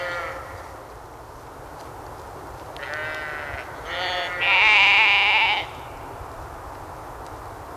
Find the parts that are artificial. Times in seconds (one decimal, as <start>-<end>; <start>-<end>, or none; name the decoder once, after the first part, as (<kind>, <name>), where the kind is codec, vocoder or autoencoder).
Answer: none

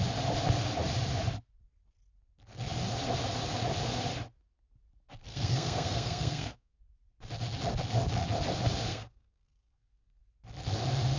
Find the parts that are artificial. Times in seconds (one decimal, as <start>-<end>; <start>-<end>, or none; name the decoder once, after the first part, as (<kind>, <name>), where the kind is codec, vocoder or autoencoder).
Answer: 5.3-6.8 (codec, SNAC); 8.9-10.2